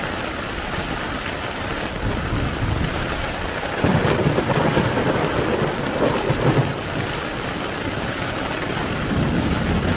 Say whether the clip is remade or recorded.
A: recorded